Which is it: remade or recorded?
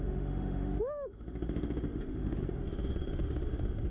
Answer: remade